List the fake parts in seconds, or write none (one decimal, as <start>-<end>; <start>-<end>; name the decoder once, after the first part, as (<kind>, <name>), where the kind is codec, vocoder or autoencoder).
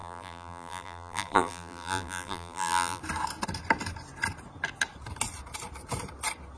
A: 0.0-3.0 (vocoder, BigVGAN v2)